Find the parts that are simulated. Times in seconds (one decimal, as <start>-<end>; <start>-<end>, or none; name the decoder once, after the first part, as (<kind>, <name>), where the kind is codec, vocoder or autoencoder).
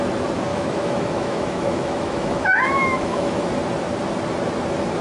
0.5-3.5 (autoencoder, DAC-VAE)